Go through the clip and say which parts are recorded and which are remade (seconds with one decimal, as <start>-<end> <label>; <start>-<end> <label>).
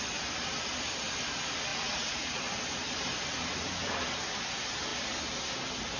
0.0-1.7 recorded; 1.7-2.4 remade; 2.4-6.0 recorded